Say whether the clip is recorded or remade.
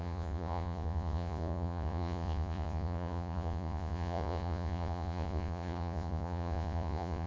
remade